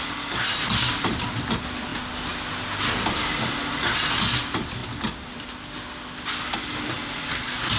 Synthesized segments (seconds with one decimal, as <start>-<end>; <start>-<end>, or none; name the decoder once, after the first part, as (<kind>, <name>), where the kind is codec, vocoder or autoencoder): none